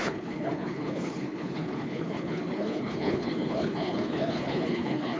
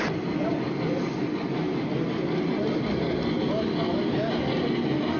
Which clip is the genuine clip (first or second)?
second